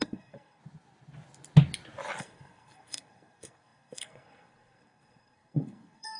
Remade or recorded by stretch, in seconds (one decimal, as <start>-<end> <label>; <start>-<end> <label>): 0.0-0.6 remade; 0.6-2.2 recorded; 2.2-6.2 remade

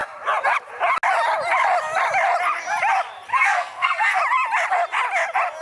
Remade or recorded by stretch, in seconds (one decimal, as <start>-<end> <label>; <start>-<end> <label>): 0.0-3.3 recorded; 3.3-4.2 remade; 4.2-5.6 recorded